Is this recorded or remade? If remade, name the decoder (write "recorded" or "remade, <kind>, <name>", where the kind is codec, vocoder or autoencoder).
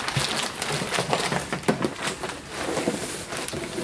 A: recorded